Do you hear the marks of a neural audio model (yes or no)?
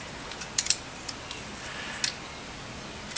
no